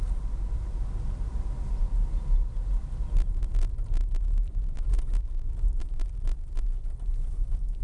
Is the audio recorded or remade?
remade